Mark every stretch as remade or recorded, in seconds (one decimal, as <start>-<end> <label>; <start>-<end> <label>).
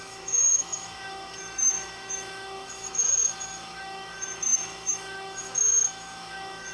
0.0-6.7 remade